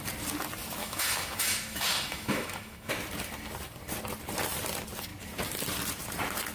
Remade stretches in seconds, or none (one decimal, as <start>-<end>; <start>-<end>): 0.8-2.9